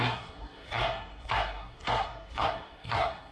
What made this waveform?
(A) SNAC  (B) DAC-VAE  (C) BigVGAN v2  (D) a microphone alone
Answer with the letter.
A